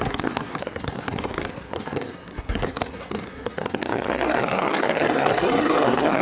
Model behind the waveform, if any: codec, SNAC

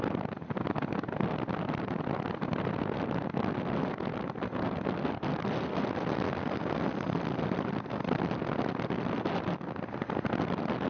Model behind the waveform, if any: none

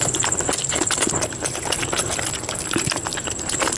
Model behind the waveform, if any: none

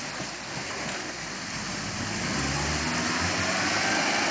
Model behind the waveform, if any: none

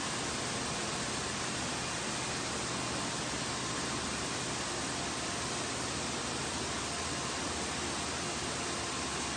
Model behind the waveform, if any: none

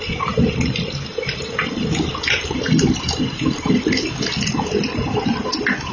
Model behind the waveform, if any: none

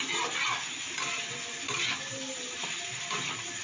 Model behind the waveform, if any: none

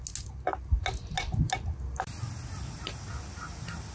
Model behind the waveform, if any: none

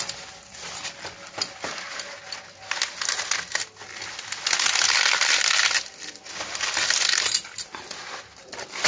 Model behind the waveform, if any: none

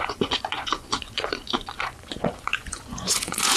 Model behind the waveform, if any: vocoder, Vocos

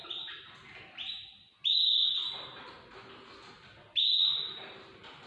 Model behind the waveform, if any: none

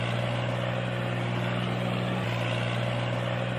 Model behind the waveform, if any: none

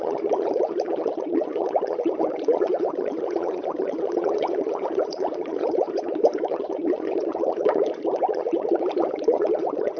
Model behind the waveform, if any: vocoder, Vocos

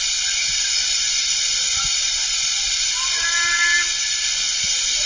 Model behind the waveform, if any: none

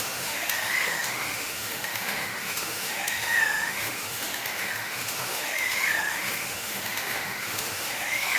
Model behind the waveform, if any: autoencoder, DAC-VAE